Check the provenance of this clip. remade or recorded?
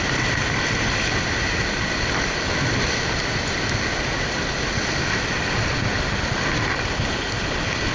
recorded